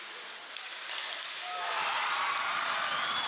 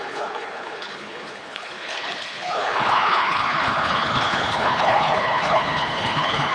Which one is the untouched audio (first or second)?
first